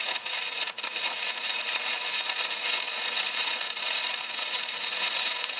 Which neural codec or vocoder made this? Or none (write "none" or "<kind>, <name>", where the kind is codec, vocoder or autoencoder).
vocoder, Vocos